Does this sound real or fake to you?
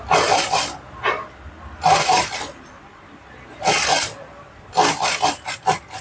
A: real